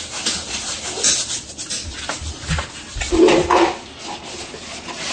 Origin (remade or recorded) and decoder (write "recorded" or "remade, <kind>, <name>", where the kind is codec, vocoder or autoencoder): recorded